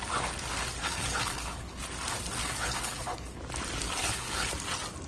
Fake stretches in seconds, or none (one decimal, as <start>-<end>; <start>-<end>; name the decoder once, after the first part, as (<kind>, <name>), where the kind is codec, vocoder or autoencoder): 0.8-1.8 (codec, HILCodec); 2.4-3.4; 4.0-4.5